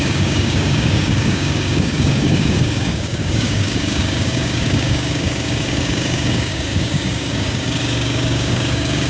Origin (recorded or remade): remade